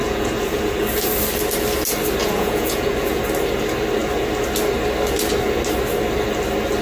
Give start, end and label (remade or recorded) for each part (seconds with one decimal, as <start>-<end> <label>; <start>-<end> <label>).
0.0-0.6 remade; 0.6-2.2 recorded; 2.2-3.2 remade; 3.2-6.8 recorded